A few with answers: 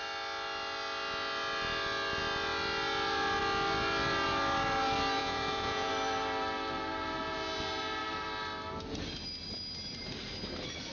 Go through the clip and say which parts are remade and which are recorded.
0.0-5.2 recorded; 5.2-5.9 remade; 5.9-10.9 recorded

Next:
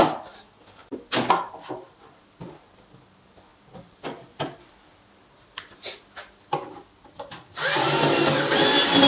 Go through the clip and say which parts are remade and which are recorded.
0.0-3.5 recorded; 3.5-5.0 remade; 5.0-9.1 recorded

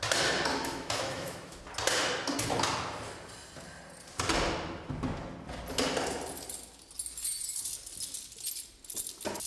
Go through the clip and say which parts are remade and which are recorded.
0.0-0.5 recorded; 0.5-1.6 remade; 1.6-9.5 recorded

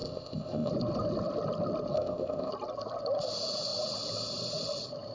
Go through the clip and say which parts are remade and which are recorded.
0.0-0.7 remade; 0.7-1.9 recorded; 1.9-2.5 remade; 2.5-5.1 recorded

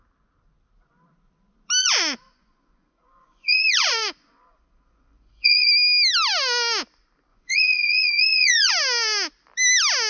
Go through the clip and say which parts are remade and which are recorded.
0.0-1.8 recorded; 1.8-5.7 remade; 5.7-7.3 recorded; 7.3-8.7 remade; 8.7-10.1 recorded

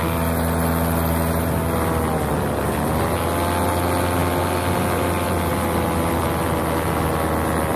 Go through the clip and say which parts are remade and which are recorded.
0.0-7.8 recorded